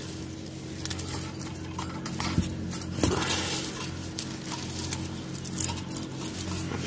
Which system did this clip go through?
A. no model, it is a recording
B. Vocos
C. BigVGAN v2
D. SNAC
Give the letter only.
A